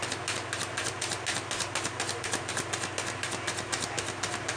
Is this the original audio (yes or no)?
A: yes